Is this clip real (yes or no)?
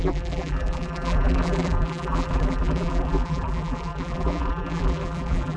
no